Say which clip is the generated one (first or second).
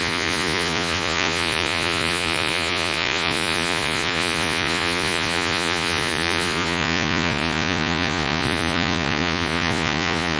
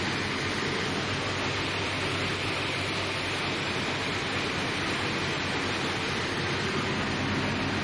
first